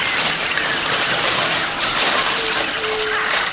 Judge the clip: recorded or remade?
recorded